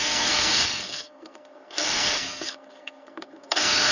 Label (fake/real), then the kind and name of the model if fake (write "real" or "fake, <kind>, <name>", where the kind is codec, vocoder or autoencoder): fake, codec, SNAC